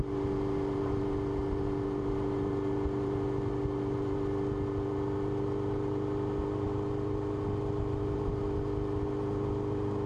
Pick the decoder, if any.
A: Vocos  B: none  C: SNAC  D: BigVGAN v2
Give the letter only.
B